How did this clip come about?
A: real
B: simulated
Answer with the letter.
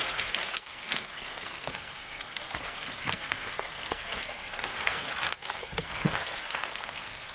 B